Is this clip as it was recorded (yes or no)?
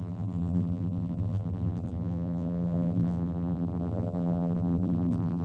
no